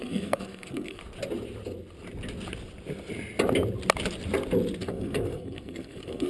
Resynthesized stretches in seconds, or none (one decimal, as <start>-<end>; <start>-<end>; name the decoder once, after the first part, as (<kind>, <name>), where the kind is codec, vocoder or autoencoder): 0.0-1.0 (codec, SNAC); 4.8-6.3